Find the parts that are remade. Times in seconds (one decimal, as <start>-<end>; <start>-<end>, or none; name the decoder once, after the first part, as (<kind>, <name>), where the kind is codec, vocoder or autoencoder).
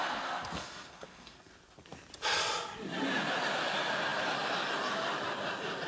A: 0.0-1.5 (codec, SNAC)